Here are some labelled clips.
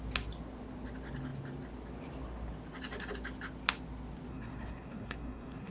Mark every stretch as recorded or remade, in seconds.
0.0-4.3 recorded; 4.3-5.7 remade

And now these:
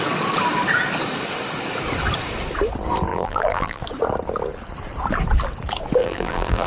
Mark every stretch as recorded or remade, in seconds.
0.0-3.1 recorded; 3.1-3.8 remade; 3.8-6.0 recorded; 6.0-6.7 remade

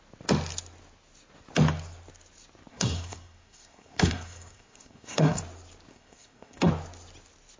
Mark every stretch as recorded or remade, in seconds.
0.0-2.7 recorded; 2.7-5.4 remade; 5.4-5.9 recorded; 5.9-6.7 remade; 6.7-7.6 recorded

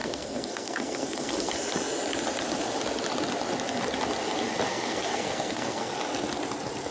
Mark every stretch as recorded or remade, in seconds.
0.0-1.5 remade; 1.5-4.7 recorded; 4.7-5.9 remade; 5.9-6.9 recorded

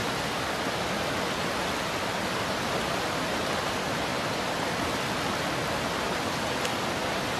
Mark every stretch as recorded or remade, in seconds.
0.0-7.4 recorded

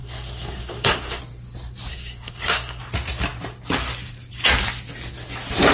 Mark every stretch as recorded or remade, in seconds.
0.0-1.2 remade; 1.2-1.9 recorded; 1.9-2.8 remade; 2.8-5.7 recorded